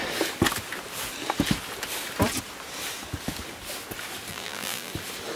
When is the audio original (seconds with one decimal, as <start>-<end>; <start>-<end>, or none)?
0.0-4.3; 4.9-5.4